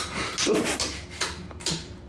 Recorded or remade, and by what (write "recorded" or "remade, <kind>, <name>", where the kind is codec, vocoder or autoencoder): recorded